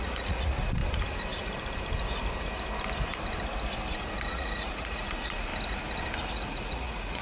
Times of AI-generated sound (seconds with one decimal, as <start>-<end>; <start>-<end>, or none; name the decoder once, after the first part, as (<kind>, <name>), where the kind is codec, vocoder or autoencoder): 0.0-0.8 (vocoder, Vocos); 4.3-5.5; 6.3-7.2